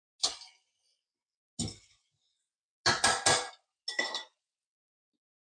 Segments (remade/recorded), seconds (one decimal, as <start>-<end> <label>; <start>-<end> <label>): 0.0-5.6 recorded